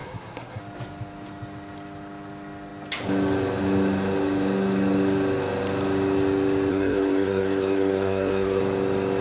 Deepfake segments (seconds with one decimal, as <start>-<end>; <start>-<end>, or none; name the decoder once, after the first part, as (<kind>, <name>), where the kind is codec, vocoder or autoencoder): 0.0-0.6 (codec, SNAC); 6.7-8.6

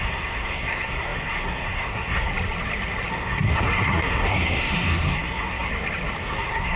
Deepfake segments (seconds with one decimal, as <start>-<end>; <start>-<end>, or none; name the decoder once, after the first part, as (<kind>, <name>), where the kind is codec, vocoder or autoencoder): 0.0-2.3 (codec, SNAC); 3.1-5.7; 6.2-6.8

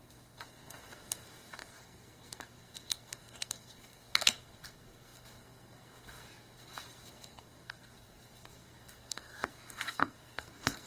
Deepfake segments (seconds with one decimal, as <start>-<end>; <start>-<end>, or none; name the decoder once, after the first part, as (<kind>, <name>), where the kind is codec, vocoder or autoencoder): 0.0-10.9 (codec, SNAC)

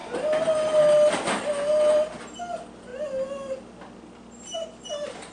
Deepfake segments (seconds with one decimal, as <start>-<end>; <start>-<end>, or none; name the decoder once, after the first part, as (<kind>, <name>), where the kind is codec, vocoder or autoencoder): none

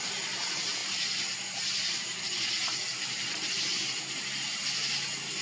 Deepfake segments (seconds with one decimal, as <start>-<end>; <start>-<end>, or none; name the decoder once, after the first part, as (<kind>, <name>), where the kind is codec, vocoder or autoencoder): none

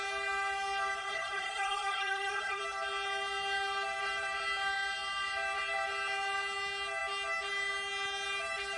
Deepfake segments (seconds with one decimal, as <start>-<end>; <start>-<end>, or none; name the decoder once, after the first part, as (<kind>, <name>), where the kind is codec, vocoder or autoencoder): 1.0-2.6 (codec, SNAC)